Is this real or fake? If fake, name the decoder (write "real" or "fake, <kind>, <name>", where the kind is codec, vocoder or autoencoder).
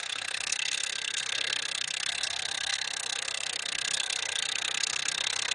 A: fake, codec, SNAC